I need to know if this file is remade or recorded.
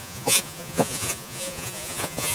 remade